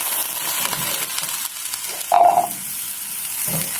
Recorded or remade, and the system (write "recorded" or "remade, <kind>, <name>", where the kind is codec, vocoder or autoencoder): recorded